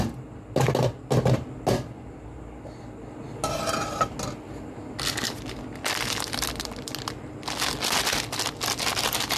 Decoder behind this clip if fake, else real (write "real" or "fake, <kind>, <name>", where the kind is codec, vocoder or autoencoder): real